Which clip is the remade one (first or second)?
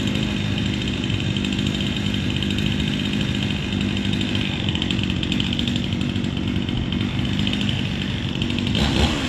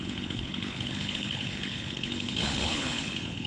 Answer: second